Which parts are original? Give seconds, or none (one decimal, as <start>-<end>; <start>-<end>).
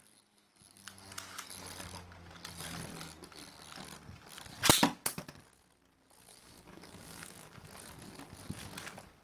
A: 0.0-6.3; 7.7-9.2